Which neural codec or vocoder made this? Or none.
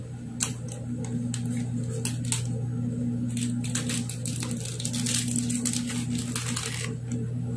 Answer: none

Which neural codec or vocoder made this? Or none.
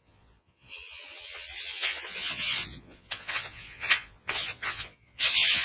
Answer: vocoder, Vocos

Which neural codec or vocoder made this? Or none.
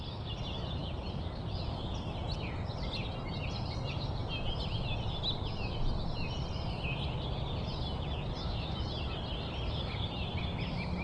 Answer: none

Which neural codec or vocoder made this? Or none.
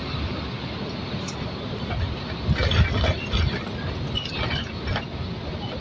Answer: none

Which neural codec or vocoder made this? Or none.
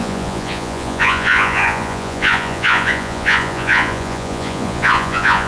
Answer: vocoder, Vocos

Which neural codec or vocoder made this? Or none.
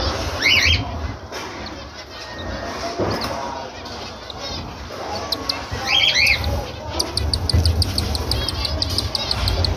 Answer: none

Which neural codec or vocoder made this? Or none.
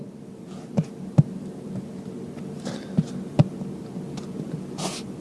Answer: none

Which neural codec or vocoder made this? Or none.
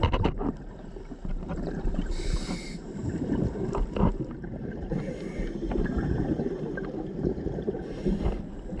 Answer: vocoder, BigVGAN v2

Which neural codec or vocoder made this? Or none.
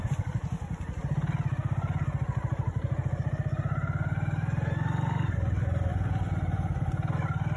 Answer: none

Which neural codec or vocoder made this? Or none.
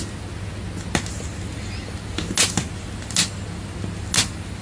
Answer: none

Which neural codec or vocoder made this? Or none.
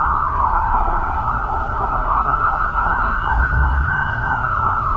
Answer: codec, SNAC